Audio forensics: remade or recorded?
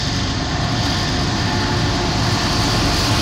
recorded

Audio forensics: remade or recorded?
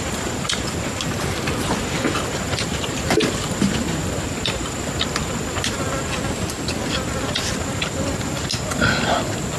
recorded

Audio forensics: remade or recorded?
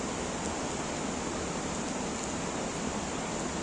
recorded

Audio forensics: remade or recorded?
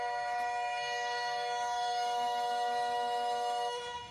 remade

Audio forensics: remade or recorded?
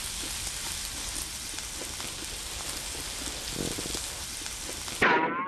recorded